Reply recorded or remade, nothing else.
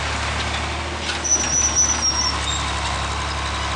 recorded